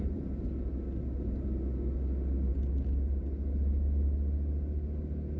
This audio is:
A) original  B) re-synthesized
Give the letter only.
A